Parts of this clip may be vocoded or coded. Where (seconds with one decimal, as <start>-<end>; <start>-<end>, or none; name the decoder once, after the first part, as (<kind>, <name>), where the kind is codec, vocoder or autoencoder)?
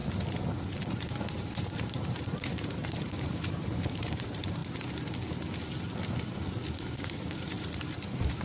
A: 1.4-4.6 (vocoder, BigVGAN v2); 6.8-8.4